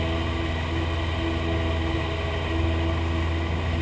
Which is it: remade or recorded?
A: recorded